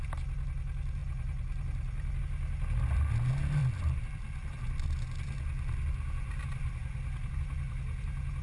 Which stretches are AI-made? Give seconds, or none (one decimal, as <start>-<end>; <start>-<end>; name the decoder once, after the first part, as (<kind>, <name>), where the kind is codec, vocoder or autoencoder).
none